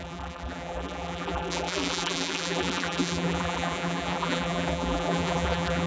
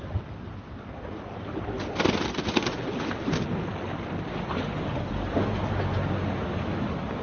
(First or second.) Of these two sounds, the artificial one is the first